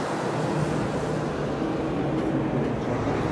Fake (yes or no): no